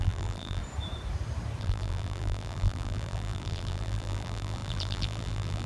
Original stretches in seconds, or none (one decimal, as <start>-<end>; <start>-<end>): 0.6-1.6